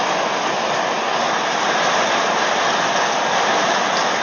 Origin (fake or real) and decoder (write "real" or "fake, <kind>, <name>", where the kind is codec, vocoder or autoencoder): real